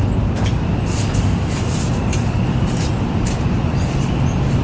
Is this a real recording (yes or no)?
yes